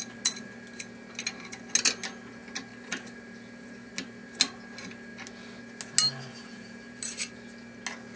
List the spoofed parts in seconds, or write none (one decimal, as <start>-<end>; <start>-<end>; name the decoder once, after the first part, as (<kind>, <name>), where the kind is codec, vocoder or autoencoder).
2.7-3.9 (vocoder, BigVGAN v2); 6.3-7.2